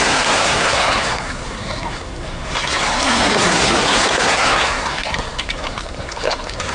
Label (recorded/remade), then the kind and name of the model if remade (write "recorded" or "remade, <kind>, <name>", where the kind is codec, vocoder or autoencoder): remade, codec, SNAC